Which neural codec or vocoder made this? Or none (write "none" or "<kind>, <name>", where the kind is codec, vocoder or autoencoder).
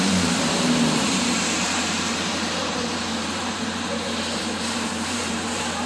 vocoder, BigVGAN v2